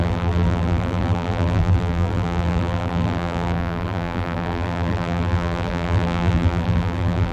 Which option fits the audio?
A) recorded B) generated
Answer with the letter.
B